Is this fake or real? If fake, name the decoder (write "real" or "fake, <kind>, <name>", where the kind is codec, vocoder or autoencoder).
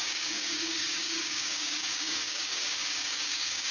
fake, codec, DAC